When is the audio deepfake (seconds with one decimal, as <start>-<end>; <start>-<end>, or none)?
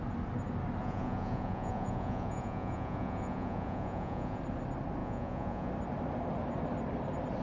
0.8-4.4; 5.0-5.7